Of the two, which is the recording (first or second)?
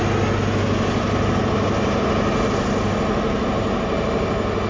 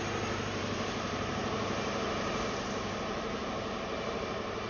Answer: first